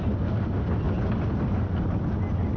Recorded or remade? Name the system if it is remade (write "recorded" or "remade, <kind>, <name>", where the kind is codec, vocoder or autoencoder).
recorded